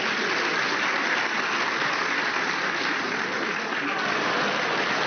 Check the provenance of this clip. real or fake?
real